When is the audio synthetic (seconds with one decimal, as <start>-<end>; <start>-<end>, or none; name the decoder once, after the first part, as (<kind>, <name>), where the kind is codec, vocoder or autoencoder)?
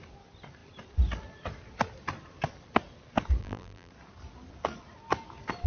3.4-3.9 (vocoder, BigVGAN v2)